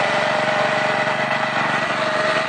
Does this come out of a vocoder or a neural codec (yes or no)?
no